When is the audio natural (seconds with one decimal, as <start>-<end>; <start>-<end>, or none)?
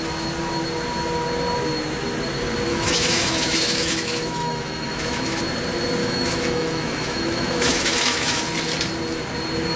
0.0-2.7; 5.4-6.0; 8.4-9.8